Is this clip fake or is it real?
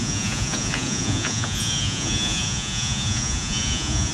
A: fake